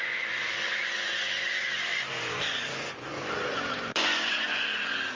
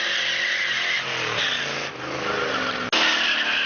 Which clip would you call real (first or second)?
second